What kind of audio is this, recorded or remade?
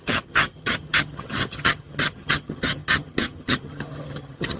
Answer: remade